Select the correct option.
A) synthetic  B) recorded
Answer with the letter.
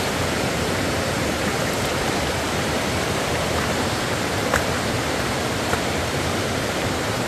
A